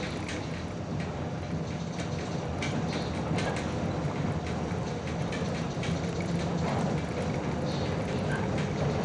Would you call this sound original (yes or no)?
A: yes